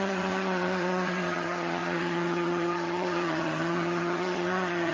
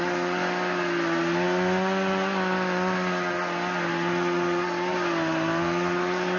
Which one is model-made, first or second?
first